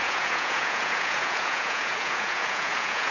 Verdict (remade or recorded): remade